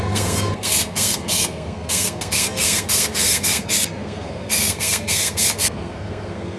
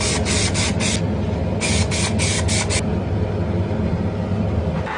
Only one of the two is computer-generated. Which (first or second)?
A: first